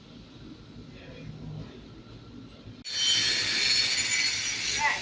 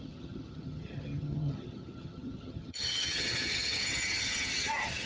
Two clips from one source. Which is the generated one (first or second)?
second